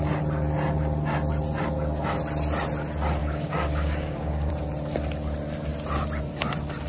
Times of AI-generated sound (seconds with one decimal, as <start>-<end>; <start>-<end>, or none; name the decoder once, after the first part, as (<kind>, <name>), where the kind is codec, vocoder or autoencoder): 3.2-4.5 (codec, DAC)